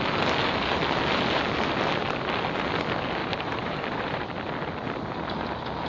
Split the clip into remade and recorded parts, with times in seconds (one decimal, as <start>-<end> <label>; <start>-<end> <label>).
0.0-3.2 recorded; 3.2-4.3 remade; 4.3-5.9 recorded